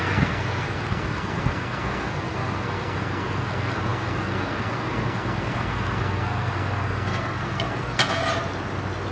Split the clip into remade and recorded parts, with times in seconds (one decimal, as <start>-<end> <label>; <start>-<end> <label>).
0.0-8.2 remade; 8.2-9.1 recorded

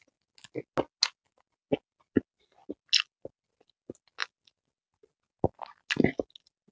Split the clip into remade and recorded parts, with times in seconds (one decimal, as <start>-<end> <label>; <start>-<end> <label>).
0.0-6.7 recorded

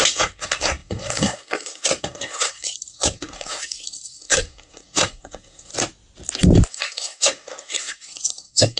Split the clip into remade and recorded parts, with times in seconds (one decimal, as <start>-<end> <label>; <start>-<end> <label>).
0.0-5.7 remade; 5.7-6.7 recorded; 6.7-8.8 remade

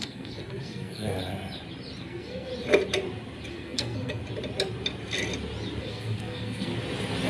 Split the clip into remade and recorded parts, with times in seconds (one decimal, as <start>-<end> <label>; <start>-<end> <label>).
0.0-1.2 remade; 1.2-2.0 recorded; 2.0-2.5 remade; 2.5-3.5 recorded; 3.5-4.2 remade; 4.2-5.8 recorded; 5.8-6.7 remade; 6.7-7.3 recorded

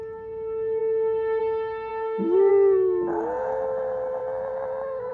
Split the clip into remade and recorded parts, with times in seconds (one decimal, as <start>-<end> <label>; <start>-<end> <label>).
0.0-1.9 recorded; 1.9-2.5 remade; 2.5-5.1 recorded